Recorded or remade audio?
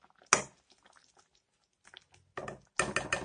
recorded